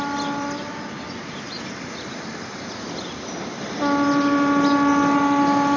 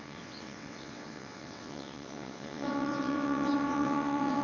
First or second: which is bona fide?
first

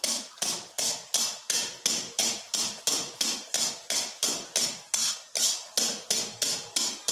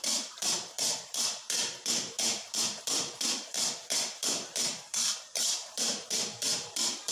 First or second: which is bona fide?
first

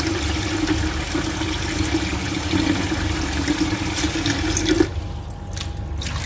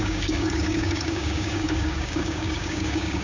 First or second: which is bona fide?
first